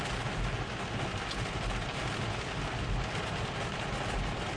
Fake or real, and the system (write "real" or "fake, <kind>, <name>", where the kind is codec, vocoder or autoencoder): real